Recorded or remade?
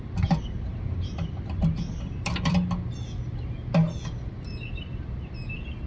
recorded